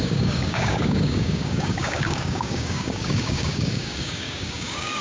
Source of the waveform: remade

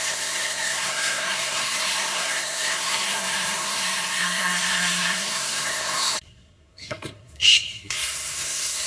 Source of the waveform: remade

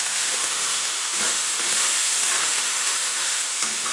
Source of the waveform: remade